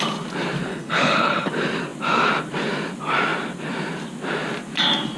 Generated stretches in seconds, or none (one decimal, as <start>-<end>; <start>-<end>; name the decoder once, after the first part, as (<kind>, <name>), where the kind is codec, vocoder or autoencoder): 0.7-1.5 (codec, HILCodec)